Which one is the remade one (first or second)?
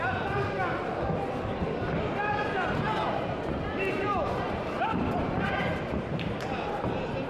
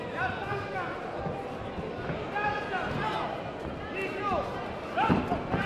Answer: first